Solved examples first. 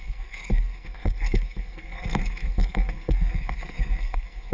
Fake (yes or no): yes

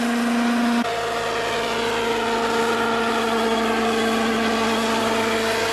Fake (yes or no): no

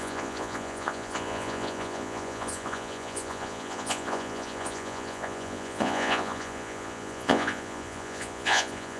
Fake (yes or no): yes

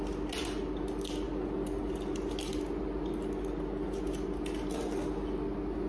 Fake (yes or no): no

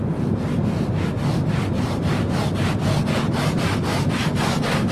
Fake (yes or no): no